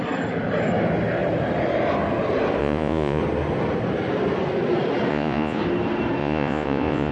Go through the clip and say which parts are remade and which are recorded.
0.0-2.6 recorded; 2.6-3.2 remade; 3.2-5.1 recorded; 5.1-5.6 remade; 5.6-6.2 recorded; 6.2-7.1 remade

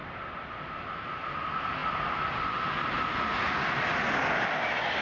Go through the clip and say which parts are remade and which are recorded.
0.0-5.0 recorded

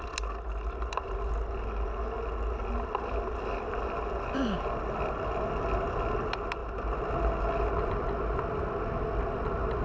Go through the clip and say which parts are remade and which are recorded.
0.0-9.8 recorded